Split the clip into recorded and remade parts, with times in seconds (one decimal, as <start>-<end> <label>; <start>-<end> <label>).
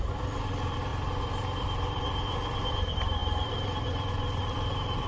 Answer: 0.0-5.1 remade